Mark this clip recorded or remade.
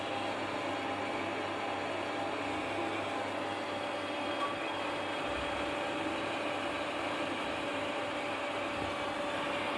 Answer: recorded